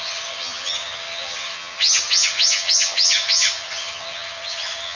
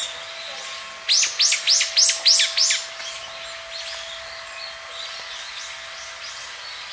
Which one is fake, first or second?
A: first